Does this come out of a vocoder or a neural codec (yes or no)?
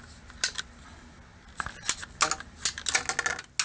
no